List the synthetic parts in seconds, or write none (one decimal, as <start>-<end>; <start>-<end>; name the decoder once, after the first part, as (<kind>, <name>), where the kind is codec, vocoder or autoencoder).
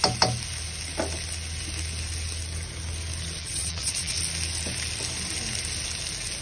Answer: 3.4-4.2 (vocoder, WaveNeXt)